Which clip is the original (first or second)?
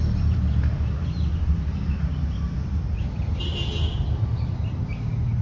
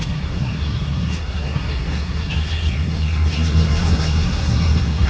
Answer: first